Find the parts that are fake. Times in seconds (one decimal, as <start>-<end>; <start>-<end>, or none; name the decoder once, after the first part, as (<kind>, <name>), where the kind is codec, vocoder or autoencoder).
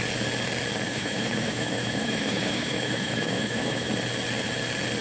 0.9-3.9 (autoencoder, DAC-VAE)